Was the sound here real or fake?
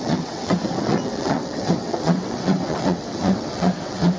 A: fake